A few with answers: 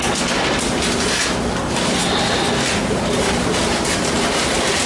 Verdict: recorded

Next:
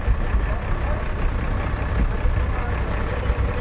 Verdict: recorded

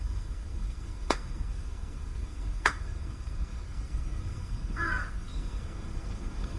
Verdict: remade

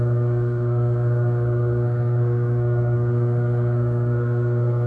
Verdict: remade